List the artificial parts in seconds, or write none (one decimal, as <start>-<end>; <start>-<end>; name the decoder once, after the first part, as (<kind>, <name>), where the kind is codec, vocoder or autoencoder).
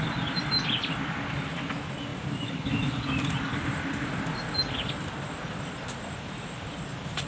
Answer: 3.5-4.1 (vocoder, BigVGAN v2)